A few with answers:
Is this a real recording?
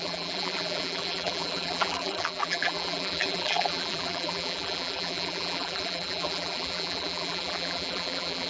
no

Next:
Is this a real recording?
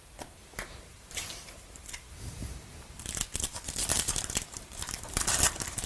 no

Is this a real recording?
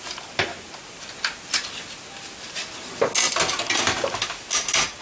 yes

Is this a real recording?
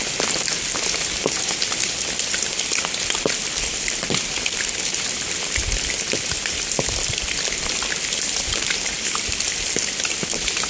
yes